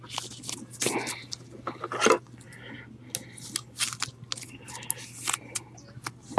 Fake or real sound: real